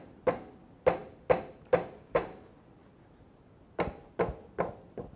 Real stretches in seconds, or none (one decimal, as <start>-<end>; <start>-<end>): 0.0-5.2